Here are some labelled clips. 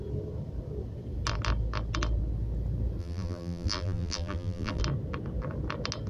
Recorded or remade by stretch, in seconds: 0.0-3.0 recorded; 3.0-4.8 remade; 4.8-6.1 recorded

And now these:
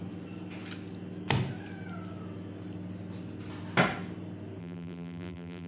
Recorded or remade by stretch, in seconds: 0.0-4.6 recorded; 4.6-5.7 remade

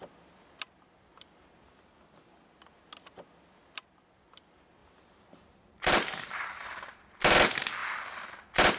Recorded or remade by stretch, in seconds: 0.0-4.8 recorded; 4.8-7.2 remade; 7.2-8.8 recorded

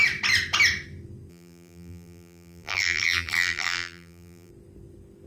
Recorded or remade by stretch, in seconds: 0.0-1.3 recorded; 1.3-4.5 remade; 4.5-5.3 recorded

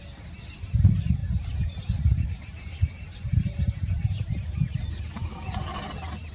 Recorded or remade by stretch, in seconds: 0.0-1.2 recorded; 1.2-5.0 remade; 5.0-6.3 recorded